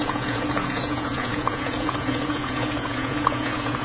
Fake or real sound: fake